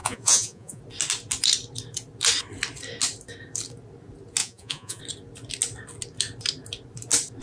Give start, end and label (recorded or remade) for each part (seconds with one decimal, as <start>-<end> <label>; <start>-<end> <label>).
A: 0.0-0.8 remade; 0.8-4.4 recorded; 4.4-5.0 remade; 5.0-7.4 recorded